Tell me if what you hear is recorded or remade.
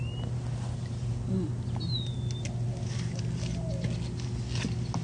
recorded